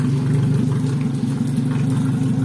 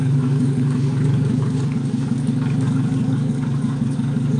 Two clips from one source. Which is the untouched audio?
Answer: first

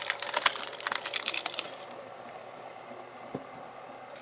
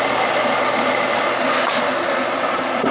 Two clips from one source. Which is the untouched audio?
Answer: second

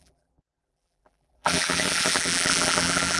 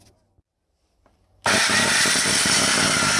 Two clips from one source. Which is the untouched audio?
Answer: second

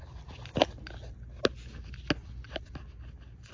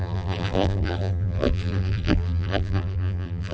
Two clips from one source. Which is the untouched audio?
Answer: first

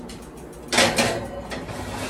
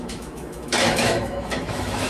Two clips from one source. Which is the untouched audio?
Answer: first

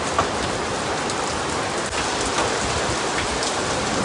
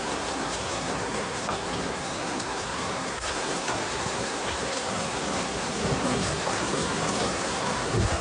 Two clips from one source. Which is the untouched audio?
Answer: first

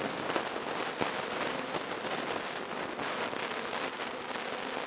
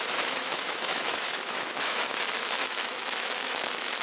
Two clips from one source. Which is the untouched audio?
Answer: first